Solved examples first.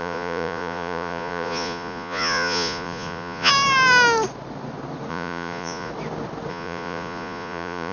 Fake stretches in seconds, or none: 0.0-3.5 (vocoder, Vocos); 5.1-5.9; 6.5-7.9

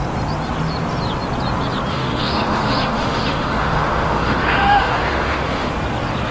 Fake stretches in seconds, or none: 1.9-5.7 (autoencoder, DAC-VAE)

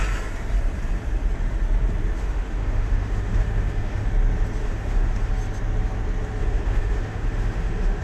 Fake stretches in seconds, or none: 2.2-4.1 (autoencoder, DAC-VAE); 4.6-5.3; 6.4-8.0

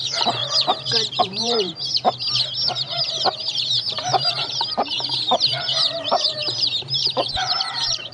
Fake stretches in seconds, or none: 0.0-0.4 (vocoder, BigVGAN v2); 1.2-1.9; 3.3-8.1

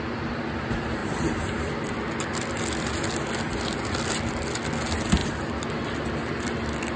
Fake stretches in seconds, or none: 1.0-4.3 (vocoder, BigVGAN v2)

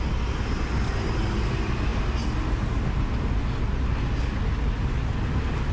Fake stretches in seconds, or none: none